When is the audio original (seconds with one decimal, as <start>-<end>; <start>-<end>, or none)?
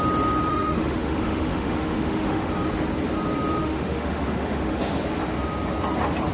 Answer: 0.0-0.5; 2.5-3.6; 5.0-6.3